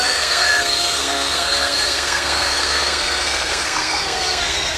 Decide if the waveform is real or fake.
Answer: fake